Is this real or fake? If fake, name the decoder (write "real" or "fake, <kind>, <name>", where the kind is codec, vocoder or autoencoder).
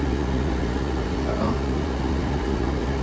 fake, vocoder, Vocos